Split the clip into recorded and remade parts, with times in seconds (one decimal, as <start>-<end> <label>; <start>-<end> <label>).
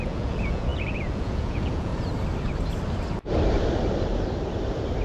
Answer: 0.0-1.9 remade; 1.9-5.0 recorded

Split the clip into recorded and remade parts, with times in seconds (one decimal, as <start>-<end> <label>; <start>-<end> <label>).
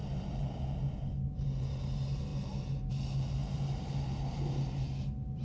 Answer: 0.0-5.4 recorded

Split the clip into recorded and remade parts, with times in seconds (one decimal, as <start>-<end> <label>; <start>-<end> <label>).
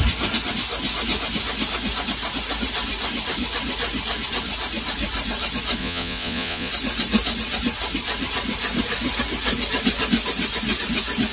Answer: 0.0-5.8 recorded; 5.8-6.7 remade; 6.7-11.3 recorded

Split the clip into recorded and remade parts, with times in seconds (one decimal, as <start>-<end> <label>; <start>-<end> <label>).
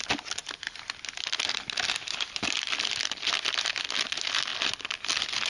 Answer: 0.0-5.5 recorded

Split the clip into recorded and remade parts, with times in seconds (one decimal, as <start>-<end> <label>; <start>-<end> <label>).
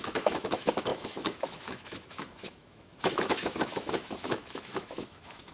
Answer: 0.0-5.5 remade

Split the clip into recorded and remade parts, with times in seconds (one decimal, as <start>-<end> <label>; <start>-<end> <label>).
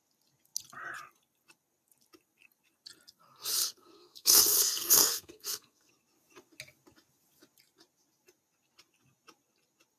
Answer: 0.0-3.6 recorded; 3.6-5.9 remade; 5.9-10.0 recorded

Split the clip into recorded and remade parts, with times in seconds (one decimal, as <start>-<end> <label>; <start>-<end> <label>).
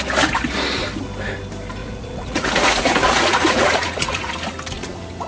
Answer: 0.0-1.8 recorded; 1.8-4.3 remade; 4.3-5.3 recorded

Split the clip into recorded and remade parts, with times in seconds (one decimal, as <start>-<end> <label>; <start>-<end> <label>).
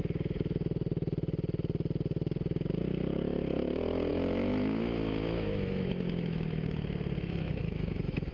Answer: 0.0-4.1 recorded; 4.1-8.3 remade